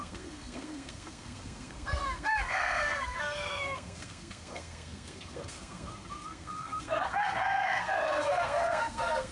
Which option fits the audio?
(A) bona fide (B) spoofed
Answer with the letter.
B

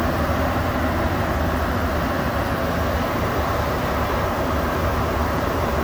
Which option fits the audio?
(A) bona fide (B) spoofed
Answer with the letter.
A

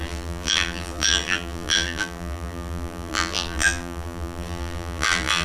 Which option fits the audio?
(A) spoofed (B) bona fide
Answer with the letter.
A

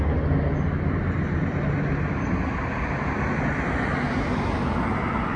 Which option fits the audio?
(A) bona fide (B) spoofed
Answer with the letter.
A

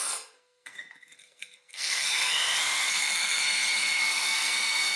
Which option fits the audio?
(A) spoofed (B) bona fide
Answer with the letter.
A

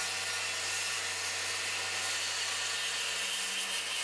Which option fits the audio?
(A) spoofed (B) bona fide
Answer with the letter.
B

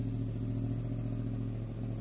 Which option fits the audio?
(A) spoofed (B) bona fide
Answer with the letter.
B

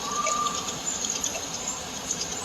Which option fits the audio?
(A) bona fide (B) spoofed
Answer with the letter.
B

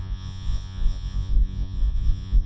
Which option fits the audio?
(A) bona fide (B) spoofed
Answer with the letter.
B